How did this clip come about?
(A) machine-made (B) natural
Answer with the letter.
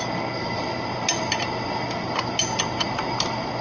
B